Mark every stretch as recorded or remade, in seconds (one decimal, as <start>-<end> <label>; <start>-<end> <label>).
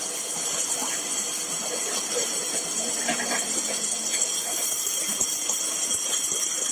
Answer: 0.0-0.8 recorded; 0.8-1.3 remade; 1.3-2.2 recorded; 2.2-5.4 remade; 5.4-6.7 recorded